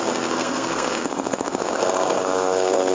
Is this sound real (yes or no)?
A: no